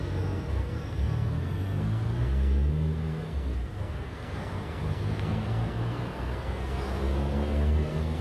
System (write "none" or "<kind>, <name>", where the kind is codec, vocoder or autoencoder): codec, SNAC